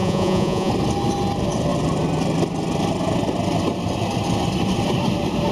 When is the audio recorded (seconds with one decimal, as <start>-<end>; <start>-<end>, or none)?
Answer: 0.7-5.5